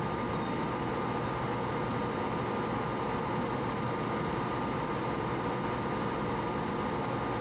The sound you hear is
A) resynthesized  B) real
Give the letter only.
B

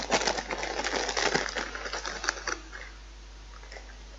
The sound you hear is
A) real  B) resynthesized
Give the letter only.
A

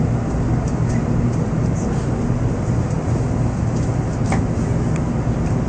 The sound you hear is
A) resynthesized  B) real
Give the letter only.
B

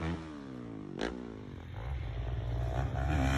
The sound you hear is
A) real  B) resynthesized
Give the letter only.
A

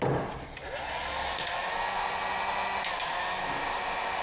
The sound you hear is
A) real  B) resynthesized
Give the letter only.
A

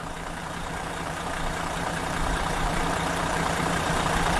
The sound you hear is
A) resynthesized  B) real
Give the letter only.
A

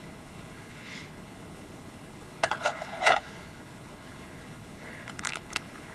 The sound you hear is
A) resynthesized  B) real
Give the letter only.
A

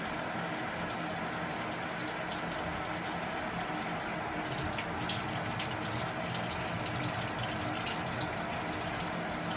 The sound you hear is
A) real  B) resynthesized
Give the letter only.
A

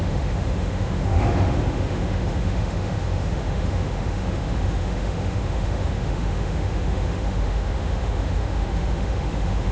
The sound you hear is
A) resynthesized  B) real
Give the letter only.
A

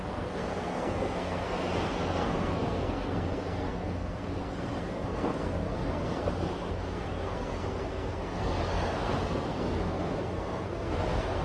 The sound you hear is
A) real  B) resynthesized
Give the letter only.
B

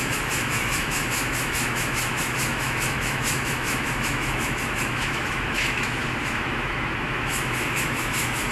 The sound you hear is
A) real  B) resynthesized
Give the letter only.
B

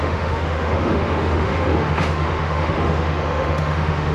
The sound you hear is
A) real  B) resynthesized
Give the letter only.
B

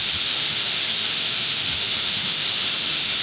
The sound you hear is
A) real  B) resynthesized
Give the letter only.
B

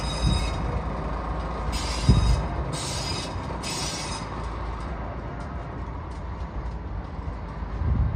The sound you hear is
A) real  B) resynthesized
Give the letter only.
A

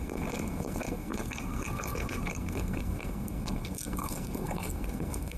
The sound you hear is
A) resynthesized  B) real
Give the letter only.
A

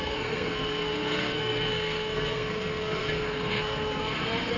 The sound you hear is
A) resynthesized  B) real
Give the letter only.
A